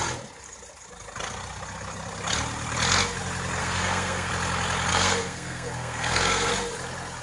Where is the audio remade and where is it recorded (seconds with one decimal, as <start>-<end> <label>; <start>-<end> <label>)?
0.0-3.6 recorded; 3.6-4.3 remade; 4.3-4.9 recorded; 4.9-6.5 remade; 6.5-7.2 recorded